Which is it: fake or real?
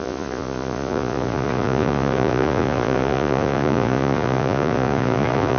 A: fake